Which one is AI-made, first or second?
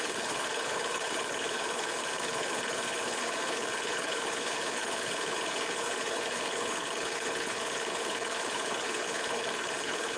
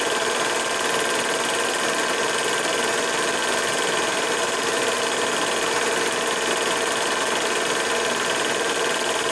first